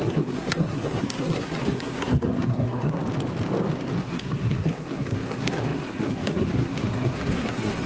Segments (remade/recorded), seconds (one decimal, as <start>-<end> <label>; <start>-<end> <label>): 0.0-3.0 remade; 3.0-4.0 recorded; 4.0-7.9 remade